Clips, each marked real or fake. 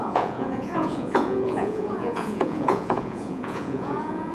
fake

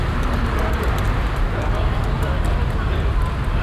real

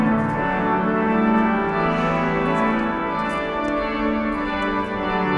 real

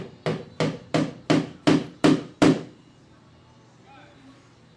real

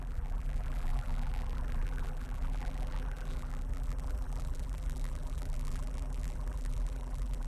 fake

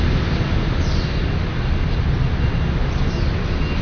real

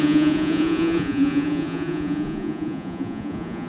fake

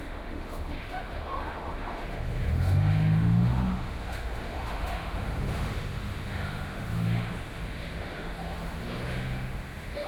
fake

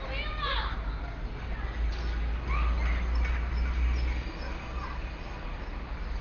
real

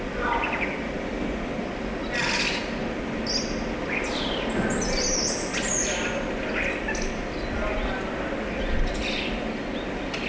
real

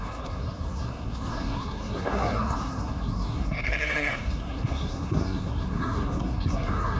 fake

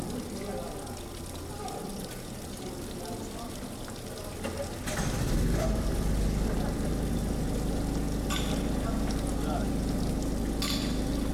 real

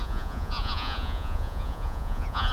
fake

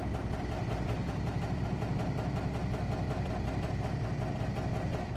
real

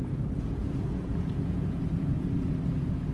fake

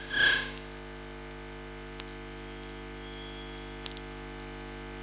real